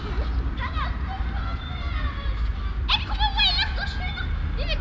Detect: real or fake real